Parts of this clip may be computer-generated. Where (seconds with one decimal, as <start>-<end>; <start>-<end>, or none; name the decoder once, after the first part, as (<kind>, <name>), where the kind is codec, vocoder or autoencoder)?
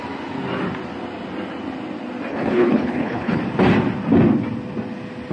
2.3-3.4 (codec, HILCodec)